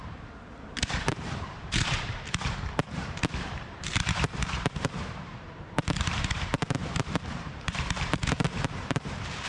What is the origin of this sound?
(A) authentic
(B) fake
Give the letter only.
B